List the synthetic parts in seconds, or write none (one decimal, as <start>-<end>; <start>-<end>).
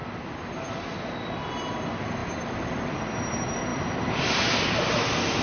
0.0-1.1; 2.2-3.2; 3.7-4.6